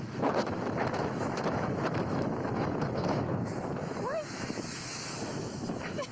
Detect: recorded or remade remade